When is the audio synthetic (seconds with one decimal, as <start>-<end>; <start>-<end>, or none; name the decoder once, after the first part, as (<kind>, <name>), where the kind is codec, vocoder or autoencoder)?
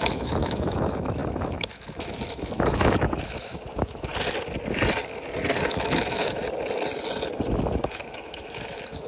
0.0-4.1 (autoencoder, DAC-VAE); 5.7-6.4; 7.9-9.1